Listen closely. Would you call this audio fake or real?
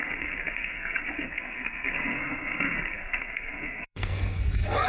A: fake